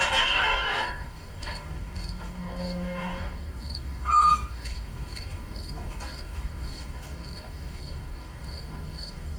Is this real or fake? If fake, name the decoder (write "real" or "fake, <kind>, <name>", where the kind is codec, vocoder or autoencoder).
fake, codec, DAC